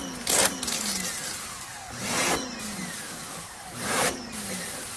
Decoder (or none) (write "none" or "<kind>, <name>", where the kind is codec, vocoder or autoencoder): none